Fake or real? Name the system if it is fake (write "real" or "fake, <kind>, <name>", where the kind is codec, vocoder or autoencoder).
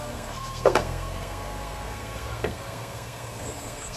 fake, codec, SNAC